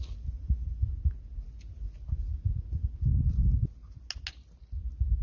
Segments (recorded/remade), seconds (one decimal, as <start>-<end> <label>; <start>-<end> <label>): 0.0-5.2 recorded